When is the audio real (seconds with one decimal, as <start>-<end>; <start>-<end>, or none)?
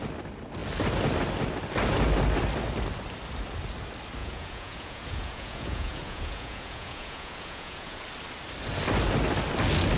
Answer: 0.0-4.2; 8.0-10.0